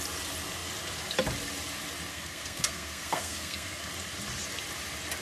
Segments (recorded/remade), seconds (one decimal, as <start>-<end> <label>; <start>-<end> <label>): 0.0-2.1 recorded; 2.1-3.9 remade; 3.9-5.2 recorded